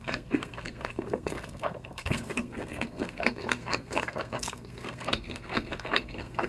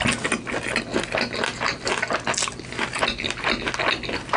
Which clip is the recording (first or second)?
second